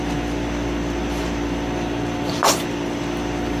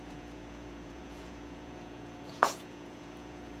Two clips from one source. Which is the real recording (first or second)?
first